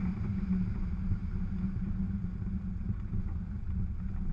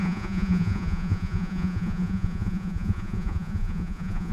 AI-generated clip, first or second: second